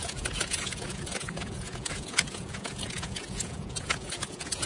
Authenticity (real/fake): fake